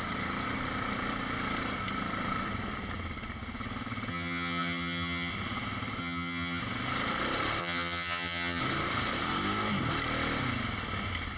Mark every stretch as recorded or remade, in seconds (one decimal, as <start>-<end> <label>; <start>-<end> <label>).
0.0-4.1 recorded; 4.1-5.3 remade; 5.3-6.0 recorded; 6.0-6.6 remade; 6.6-7.6 recorded; 7.6-8.6 remade; 8.6-11.4 recorded

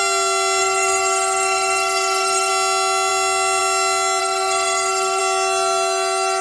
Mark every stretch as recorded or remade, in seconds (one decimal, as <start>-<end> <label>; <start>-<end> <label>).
0.0-0.6 recorded; 0.6-2.5 remade; 2.5-4.2 recorded; 4.2-5.2 remade; 5.2-6.4 recorded